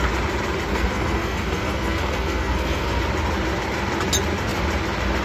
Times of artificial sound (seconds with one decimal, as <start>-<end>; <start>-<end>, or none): 0.7-3.0